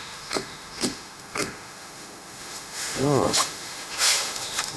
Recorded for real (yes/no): no